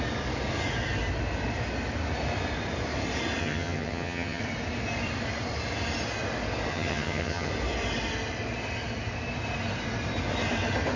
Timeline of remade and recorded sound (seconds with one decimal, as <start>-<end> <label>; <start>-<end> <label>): 0.0-3.4 recorded; 3.4-4.4 remade; 4.4-6.7 recorded; 6.7-7.5 remade; 7.5-11.0 recorded